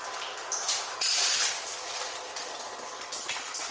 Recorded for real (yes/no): yes